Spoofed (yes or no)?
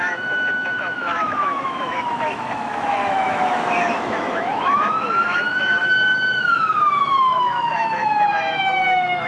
yes